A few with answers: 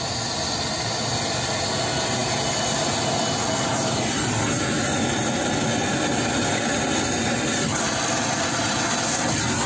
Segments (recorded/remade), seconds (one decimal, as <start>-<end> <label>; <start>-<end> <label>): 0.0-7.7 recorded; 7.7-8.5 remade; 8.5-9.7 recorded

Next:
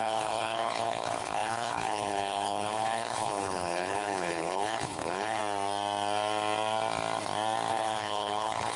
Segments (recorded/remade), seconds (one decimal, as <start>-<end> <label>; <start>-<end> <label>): 0.0-5.4 remade; 5.4-7.7 recorded; 7.7-8.8 remade

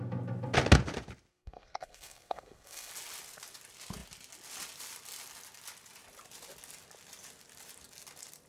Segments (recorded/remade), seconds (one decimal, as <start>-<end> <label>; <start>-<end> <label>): 0.0-1.3 recorded; 1.3-2.9 remade; 2.9-8.5 recorded

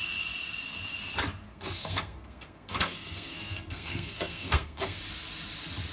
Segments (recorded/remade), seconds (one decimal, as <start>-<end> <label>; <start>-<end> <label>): 0.0-1.5 recorded; 1.5-5.0 remade; 5.0-5.9 recorded

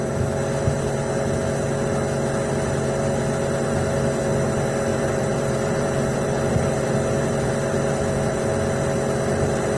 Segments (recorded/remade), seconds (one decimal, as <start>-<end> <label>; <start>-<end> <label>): 0.0-4.9 recorded; 4.9-6.5 remade; 6.5-9.8 recorded

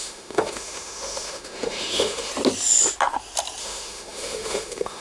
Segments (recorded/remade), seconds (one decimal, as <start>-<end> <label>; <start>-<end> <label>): 0.0-2.3 remade; 2.3-3.6 recorded; 3.6-5.0 remade